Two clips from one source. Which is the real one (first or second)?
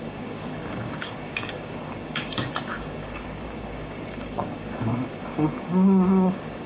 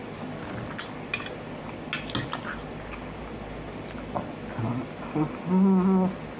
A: second